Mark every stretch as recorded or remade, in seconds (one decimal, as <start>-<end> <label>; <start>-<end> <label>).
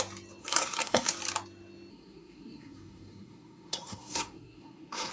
0.0-0.4 recorded; 0.4-1.1 remade; 1.1-1.9 recorded; 1.9-5.1 remade